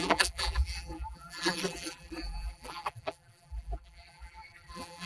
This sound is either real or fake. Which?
fake